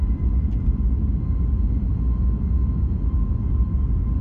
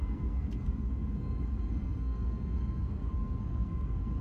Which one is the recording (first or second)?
first